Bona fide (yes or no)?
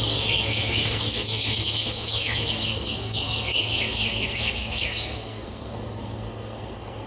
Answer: no